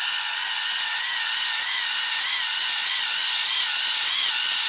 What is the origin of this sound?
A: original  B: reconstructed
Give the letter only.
A